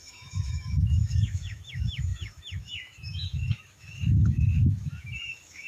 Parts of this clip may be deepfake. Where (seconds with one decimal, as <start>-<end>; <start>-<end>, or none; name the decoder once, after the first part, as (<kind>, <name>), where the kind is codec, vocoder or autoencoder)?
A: 0.0-5.7 (autoencoder, DAC-VAE)